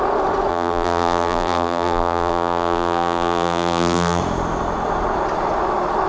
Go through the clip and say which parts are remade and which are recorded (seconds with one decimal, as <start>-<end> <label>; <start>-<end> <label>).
0.0-0.5 recorded; 0.5-4.2 remade; 4.2-6.1 recorded